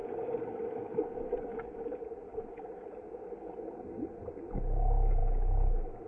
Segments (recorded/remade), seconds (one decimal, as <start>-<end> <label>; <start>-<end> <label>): 0.0-6.1 recorded